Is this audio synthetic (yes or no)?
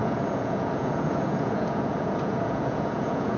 yes